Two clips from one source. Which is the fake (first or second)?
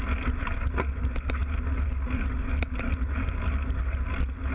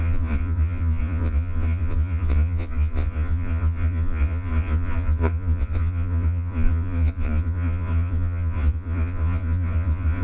second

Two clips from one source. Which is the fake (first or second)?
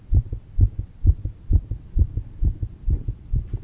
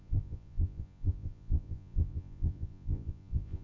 second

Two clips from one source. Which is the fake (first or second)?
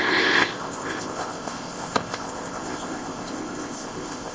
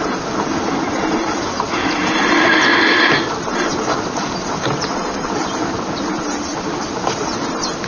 first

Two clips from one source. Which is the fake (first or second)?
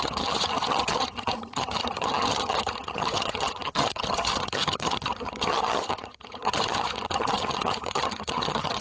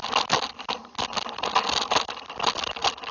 first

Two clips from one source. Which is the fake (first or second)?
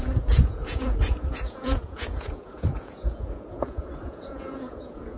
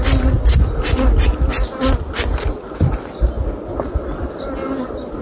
first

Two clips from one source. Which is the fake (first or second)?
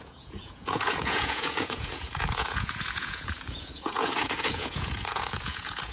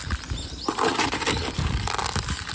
first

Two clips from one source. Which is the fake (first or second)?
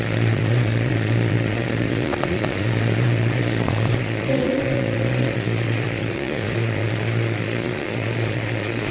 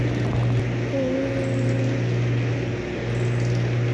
first